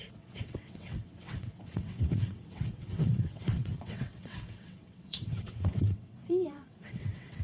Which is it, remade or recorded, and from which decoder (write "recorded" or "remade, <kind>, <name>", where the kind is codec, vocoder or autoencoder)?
remade, vocoder, WaveNeXt